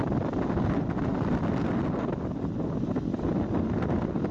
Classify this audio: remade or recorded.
recorded